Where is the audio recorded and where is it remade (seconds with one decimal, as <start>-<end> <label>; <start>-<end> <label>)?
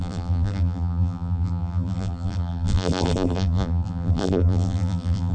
0.0-5.3 remade